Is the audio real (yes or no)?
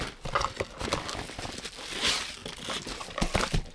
yes